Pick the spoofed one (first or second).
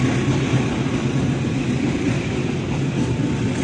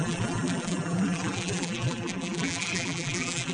second